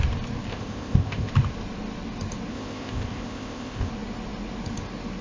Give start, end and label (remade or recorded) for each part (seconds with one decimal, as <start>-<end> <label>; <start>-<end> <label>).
0.0-0.5 recorded; 0.5-1.3 remade; 1.3-2.5 recorded; 2.5-3.9 remade; 3.9-5.2 recorded